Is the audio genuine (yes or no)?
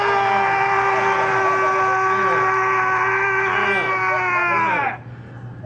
yes